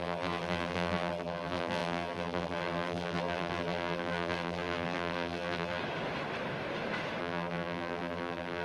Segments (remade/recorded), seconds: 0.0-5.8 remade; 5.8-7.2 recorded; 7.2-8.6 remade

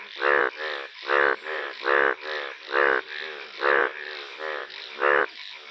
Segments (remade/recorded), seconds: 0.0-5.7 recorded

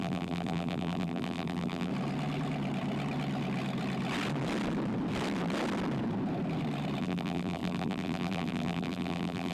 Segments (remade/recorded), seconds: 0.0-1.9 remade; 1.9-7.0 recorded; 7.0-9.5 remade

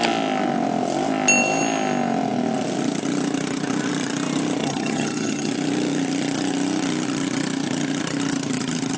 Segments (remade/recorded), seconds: 0.0-4.6 recorded; 4.6-5.5 remade; 5.5-9.0 recorded

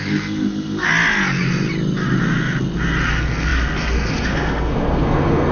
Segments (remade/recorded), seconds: 0.0-0.9 remade; 0.9-3.1 recorded; 3.1-5.5 remade